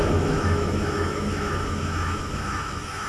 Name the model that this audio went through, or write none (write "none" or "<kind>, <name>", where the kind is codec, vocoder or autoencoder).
autoencoder, DAC-VAE